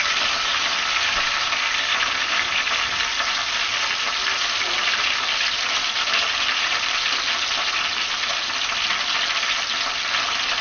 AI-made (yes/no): no